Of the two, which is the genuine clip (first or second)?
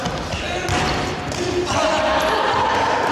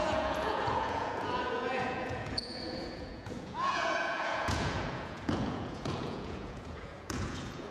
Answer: first